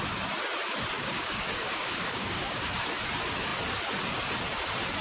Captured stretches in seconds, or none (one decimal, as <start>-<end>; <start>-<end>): 0.0-1.0; 2.7-5.0